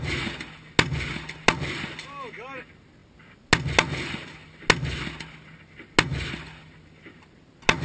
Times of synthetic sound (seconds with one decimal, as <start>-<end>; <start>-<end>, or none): none